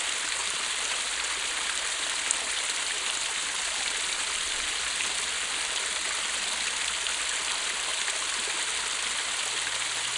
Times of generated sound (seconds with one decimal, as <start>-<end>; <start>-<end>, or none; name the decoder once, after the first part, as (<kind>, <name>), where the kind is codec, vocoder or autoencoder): 0.4-3.0 (vocoder, BigVGAN v2)